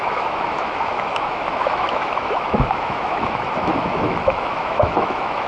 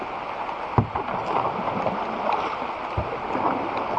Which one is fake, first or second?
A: first